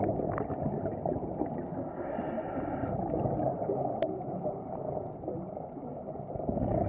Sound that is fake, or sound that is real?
real